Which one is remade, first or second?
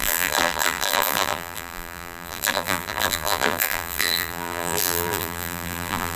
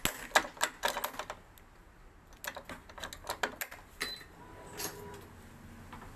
first